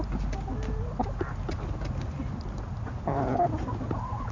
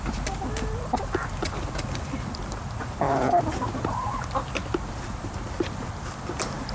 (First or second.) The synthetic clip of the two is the second